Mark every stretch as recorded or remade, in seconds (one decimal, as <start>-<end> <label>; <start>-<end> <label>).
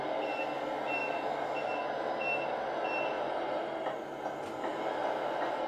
0.0-5.7 recorded